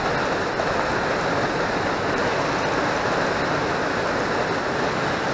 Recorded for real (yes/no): yes